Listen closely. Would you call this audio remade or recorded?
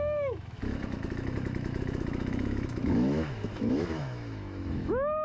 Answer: remade